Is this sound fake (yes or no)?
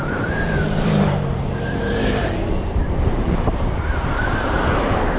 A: yes